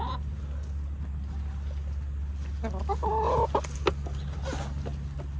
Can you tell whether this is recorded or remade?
recorded